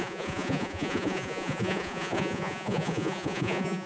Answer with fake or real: fake